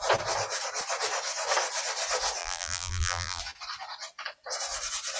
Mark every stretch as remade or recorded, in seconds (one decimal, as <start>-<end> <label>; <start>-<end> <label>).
0.0-2.4 recorded; 2.4-3.4 remade; 3.4-5.2 recorded